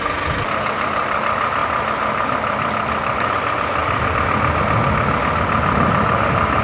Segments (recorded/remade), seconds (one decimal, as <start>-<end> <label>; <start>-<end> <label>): 0.0-1.6 recorded; 1.6-3.3 remade; 3.3-3.8 recorded; 3.8-4.6 remade; 4.6-6.6 recorded